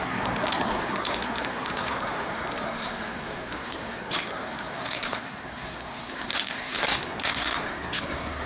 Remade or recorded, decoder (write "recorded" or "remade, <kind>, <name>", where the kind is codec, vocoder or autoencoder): remade, codec, SNAC